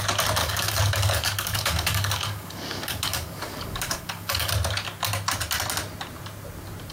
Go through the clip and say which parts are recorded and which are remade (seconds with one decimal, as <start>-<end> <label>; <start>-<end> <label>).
0.0-0.4 recorded; 0.4-4.5 remade; 4.5-6.9 recorded